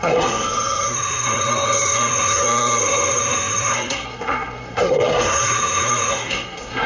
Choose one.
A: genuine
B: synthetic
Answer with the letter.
B